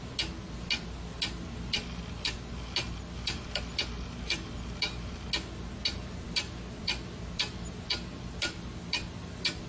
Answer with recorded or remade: recorded